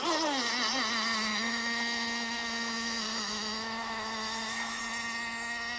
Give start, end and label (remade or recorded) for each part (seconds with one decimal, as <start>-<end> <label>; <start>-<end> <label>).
0.0-1.3 recorded; 1.3-4.8 remade; 4.8-5.8 recorded